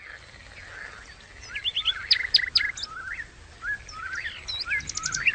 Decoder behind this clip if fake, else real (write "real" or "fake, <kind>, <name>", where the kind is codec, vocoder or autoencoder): real